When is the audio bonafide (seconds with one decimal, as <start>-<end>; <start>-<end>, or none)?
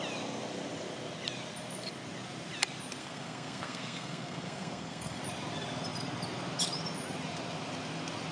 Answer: 0.0-3.0; 5.2-8.3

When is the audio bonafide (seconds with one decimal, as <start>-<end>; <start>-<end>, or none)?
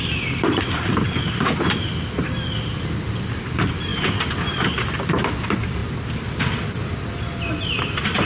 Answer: 0.0-8.3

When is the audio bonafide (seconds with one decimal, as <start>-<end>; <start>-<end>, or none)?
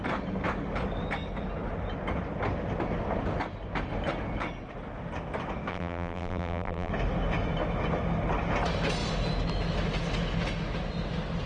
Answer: 0.0-5.7; 6.9-11.5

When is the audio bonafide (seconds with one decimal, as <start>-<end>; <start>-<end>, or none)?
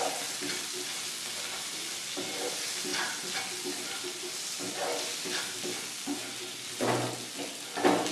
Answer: 0.0-8.1